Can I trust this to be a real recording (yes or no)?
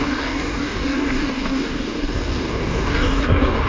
no